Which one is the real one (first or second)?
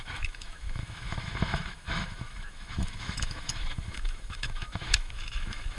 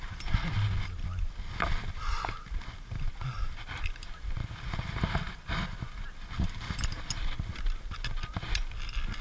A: second